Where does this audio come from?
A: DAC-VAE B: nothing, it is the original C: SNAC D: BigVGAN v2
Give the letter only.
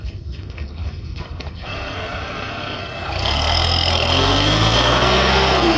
C